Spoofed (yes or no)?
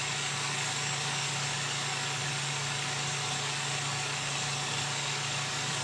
yes